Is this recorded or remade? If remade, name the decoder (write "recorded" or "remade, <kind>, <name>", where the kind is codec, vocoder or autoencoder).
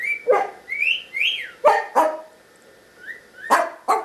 recorded